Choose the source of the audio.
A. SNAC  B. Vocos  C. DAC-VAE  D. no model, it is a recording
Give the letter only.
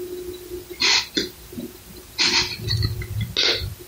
D